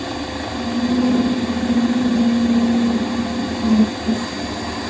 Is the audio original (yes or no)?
yes